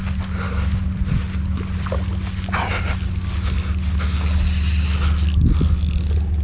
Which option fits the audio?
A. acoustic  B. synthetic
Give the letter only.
A